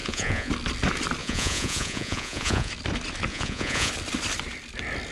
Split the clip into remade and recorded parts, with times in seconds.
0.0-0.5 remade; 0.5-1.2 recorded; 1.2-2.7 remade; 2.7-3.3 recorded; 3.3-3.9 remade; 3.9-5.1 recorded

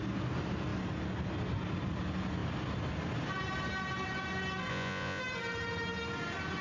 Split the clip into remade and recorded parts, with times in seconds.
0.0-4.7 recorded; 4.7-5.2 remade; 5.2-6.6 recorded

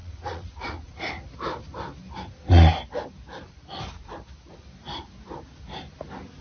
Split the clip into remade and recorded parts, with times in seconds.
0.0-1.1 remade; 1.1-6.4 recorded

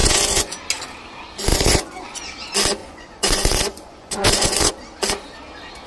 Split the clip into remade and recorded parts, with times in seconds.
0.0-0.6 remade; 0.6-1.5 recorded; 1.5-2.2 remade; 2.2-2.8 recorded; 2.8-4.7 remade; 4.7-5.9 recorded

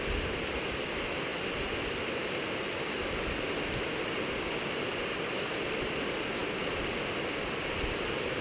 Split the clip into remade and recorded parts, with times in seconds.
0.0-8.4 recorded

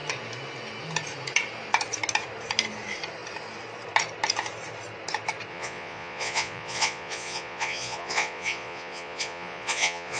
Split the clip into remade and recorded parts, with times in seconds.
0.0-5.5 recorded; 5.5-10.2 remade

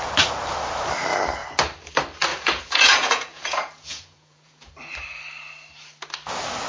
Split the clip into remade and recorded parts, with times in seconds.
0.0-2.3 recorded; 2.3-4.7 remade; 4.7-6.7 recorded